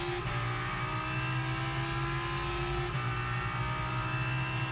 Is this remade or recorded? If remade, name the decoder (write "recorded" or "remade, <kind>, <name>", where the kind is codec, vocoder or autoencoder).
recorded